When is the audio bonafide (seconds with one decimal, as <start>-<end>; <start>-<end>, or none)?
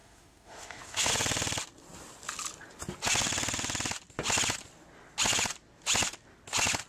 1.1-6.9